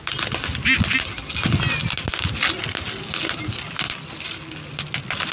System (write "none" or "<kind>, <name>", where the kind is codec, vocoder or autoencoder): none